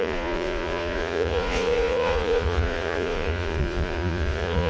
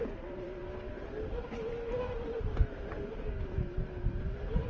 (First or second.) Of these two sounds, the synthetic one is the first